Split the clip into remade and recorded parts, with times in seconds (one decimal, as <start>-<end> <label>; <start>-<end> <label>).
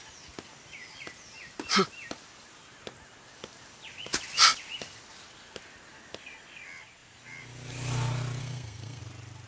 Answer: 0.0-8.4 recorded; 8.4-9.0 remade; 9.0-9.5 recorded